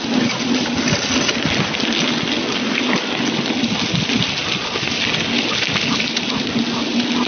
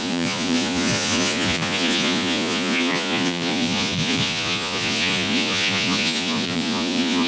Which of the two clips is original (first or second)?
first